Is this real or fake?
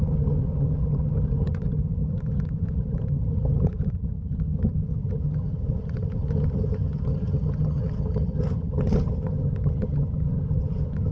fake